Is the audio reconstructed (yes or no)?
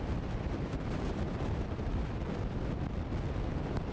no